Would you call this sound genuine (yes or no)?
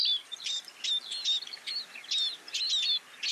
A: yes